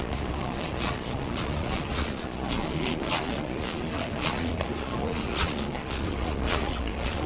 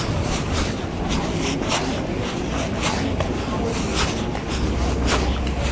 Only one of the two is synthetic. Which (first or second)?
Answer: first